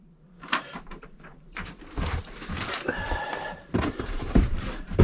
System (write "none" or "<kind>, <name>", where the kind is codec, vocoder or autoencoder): vocoder, BigVGAN v2